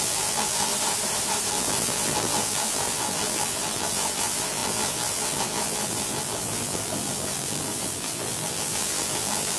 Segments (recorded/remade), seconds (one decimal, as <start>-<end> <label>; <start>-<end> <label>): 0.0-0.7 remade; 0.7-1.5 recorded; 1.5-9.6 remade